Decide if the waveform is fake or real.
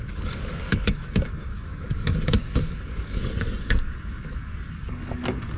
fake